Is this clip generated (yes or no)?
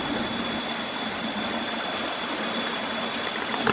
yes